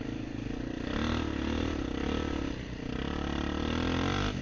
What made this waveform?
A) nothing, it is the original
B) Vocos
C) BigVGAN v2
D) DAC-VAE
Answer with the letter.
A